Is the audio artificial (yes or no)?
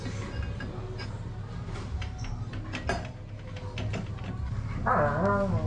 no